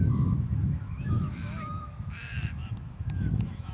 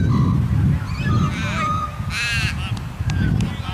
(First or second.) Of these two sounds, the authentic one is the second